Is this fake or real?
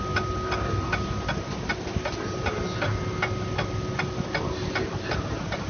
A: real